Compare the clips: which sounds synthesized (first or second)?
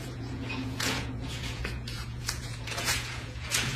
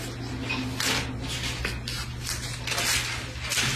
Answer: first